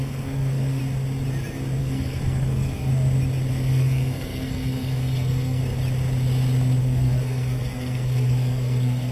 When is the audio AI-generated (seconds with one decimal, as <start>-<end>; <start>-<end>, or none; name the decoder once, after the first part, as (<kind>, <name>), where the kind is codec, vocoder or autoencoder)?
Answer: 0.0-0.8 (codec, SNAC); 1.8-2.9; 3.5-5.6; 6.8-9.1